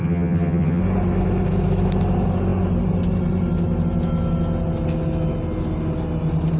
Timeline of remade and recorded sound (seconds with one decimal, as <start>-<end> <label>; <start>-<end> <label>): 0.0-0.8 remade; 0.8-6.6 recorded